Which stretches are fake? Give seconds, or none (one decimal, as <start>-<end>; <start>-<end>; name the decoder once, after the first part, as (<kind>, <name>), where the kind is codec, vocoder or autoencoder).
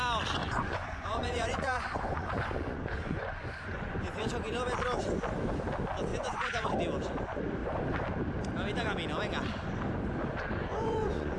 0.4-4.3 (vocoder, Vocos); 6.1-6.7; 10.7-11.4